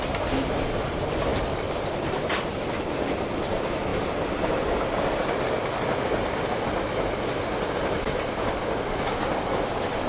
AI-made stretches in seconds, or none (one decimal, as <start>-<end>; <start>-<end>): none